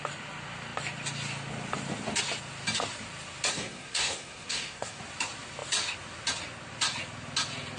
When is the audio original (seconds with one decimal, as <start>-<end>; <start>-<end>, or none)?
0.0-3.5; 5.0-7.8